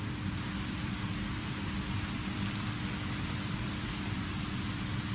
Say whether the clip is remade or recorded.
recorded